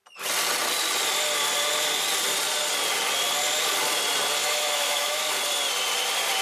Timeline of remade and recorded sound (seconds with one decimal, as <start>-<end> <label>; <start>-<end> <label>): 0.0-4.4 recorded; 4.4-5.2 remade; 5.2-6.4 recorded

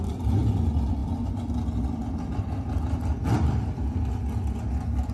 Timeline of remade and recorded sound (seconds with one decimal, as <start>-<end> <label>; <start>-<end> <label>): 0.0-5.1 recorded

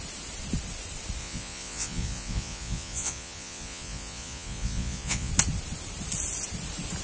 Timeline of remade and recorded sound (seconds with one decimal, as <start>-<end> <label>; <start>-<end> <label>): 0.0-1.2 recorded; 1.2-5.3 remade; 5.3-7.0 recorded

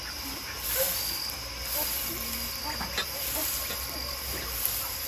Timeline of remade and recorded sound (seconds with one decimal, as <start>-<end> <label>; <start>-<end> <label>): 0.0-3.0 recorded; 3.0-3.7 remade; 3.7-5.1 recorded

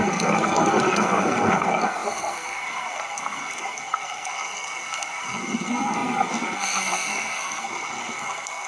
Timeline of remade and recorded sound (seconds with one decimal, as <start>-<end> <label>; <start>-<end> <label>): 0.0-8.7 remade

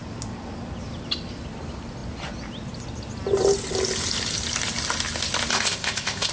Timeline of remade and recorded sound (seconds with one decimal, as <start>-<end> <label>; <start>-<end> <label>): 0.0-5.5 recorded; 5.5-6.3 remade

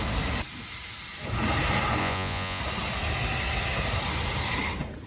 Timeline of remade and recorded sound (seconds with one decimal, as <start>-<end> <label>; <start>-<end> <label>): 0.0-2.0 recorded; 2.0-2.6 remade; 2.6-5.1 recorded